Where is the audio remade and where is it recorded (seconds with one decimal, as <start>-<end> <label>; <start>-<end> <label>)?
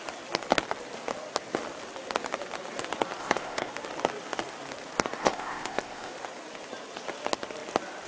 0.0-3.2 recorded; 3.2-3.7 remade; 3.7-5.2 recorded; 5.2-6.1 remade; 6.1-8.1 recorded